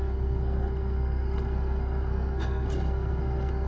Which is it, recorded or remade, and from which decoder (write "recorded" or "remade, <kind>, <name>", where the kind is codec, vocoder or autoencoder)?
remade, codec, SNAC